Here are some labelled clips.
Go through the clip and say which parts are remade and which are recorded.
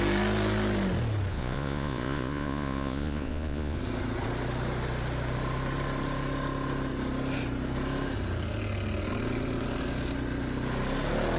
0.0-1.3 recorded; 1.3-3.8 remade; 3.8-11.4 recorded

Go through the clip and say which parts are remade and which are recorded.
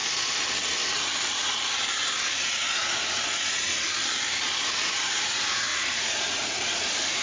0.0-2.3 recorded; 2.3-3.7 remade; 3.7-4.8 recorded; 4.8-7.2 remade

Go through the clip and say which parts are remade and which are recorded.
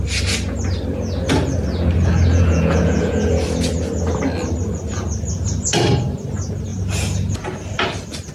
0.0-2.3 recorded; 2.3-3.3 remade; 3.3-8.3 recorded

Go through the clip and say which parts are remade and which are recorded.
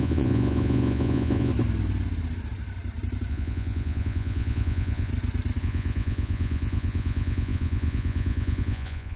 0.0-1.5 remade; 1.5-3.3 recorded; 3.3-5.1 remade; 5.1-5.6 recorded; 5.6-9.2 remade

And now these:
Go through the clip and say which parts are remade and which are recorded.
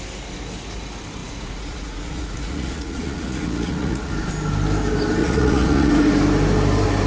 0.0-1.2 recorded; 1.2-4.1 remade; 4.1-5.2 recorded; 5.2-5.9 remade; 5.9-7.1 recorded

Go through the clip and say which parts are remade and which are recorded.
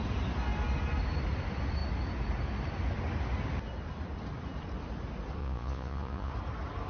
0.0-5.4 recorded; 5.4-6.3 remade; 6.3-6.9 recorded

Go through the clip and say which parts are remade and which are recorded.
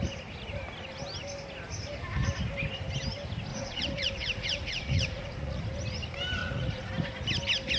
0.0-3.5 recorded; 3.5-5.6 remade; 5.6-6.4 recorded; 6.4-6.9 remade; 6.9-7.8 recorded